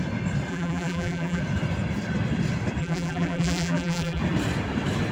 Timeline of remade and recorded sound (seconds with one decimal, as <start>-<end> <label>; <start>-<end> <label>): 0.0-0.5 recorded; 0.5-1.4 remade; 1.4-2.8 recorded; 2.8-4.2 remade; 4.2-5.1 recorded